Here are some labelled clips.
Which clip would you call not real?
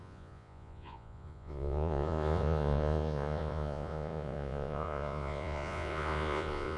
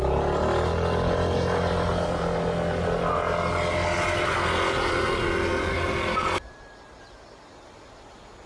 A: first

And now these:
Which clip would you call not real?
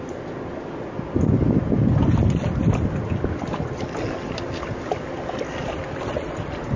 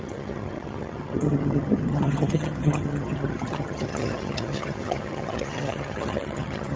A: second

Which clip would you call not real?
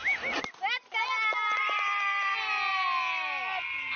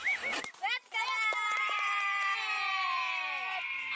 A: second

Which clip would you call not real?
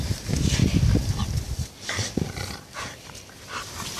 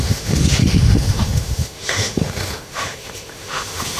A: second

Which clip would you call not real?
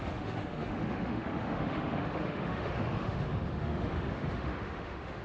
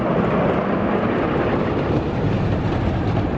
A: first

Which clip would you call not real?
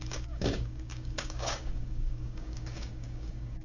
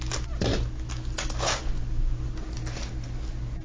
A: first